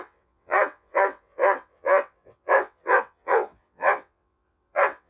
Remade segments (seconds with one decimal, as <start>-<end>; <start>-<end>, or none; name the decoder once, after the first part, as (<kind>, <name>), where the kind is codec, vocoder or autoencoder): 0.0-5.1 (vocoder, WaveNeXt)

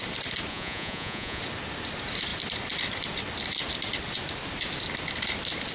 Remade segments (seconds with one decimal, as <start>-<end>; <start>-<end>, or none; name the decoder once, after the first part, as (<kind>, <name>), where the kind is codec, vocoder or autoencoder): 0.5-1.4 (vocoder, Vocos)

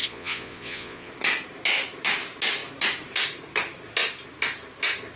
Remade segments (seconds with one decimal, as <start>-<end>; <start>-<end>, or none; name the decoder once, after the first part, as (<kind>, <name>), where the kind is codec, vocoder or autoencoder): 0.0-1.1 (vocoder, Vocos)

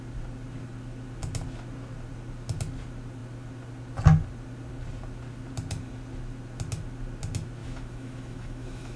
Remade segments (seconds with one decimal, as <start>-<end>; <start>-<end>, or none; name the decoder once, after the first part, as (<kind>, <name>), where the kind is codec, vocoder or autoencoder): 7.6-9.0 (autoencoder, DAC-VAE)

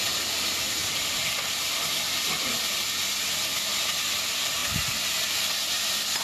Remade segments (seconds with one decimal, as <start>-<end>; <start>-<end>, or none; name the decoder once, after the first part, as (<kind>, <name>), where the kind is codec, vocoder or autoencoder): 0.8-3.0 (vocoder, BigVGAN v2); 4.6-5.4

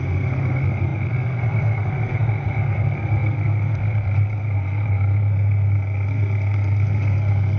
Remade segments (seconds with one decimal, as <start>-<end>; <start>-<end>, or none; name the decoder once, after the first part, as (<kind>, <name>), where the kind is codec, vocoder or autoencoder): 0.0-7.6 (codec, SNAC)

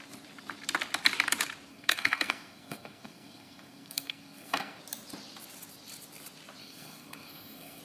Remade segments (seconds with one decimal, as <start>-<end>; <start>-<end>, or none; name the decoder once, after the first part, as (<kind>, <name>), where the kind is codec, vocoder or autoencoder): 1.7-4.8 (codec, SNAC); 6.6-7.8

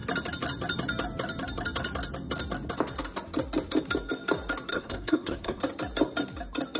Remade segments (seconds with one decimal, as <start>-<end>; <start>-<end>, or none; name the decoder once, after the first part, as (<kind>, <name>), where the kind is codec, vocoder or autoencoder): 4.7-5.6 (codec, SNAC)